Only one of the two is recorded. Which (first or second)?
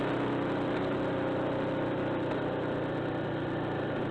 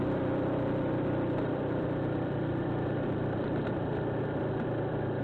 first